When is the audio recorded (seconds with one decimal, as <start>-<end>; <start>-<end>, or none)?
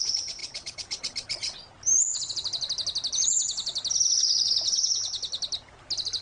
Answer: 0.0-6.2